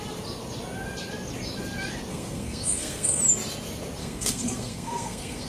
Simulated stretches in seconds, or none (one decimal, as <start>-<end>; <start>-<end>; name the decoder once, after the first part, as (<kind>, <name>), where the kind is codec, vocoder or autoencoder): 2.1-3.2 (codec, SNAC); 4.0-5.5